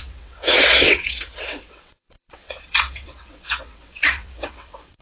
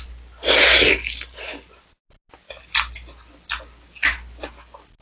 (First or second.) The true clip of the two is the second